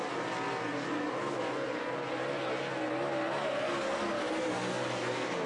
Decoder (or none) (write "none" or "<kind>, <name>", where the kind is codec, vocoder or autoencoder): none